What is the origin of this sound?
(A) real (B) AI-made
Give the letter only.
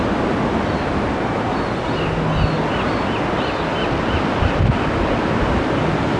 A